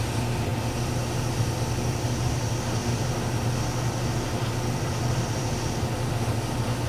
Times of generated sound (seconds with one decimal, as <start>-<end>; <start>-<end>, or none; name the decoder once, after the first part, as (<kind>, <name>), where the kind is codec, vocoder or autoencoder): none